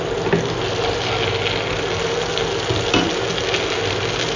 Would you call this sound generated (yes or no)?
no